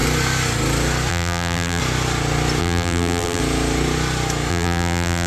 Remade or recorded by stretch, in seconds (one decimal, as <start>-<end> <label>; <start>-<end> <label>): 0.0-1.1 recorded; 1.1-1.8 remade; 1.8-2.6 recorded; 2.6-3.4 remade; 3.4-4.5 recorded; 4.5-5.3 remade